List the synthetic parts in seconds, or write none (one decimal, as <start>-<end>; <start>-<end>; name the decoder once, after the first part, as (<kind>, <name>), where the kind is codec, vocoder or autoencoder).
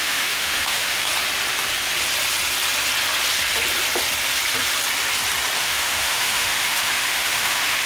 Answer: 0.0-1.1 (autoencoder, DAC-VAE); 5.6-7.9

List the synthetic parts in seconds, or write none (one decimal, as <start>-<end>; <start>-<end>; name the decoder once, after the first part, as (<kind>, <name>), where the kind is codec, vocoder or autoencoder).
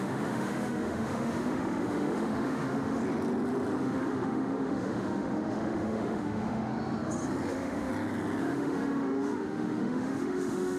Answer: 0.0-3.0 (autoencoder, DAC-VAE); 3.8-6.7; 7.5-7.9; 8.4-10.8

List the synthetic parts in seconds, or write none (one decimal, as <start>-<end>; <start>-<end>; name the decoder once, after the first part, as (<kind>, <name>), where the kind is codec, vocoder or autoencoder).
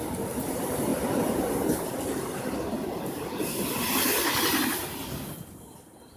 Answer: none